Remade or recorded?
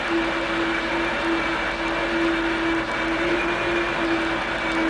recorded